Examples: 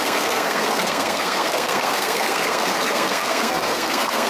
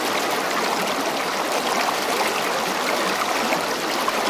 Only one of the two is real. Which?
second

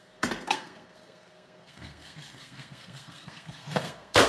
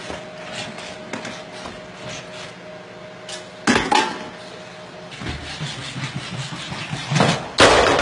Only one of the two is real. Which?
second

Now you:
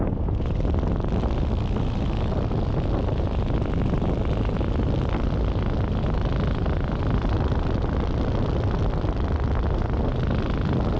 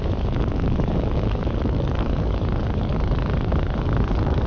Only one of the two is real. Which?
first